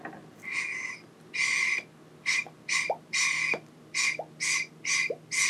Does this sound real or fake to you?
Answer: real